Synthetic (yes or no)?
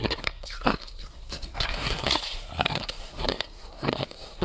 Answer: yes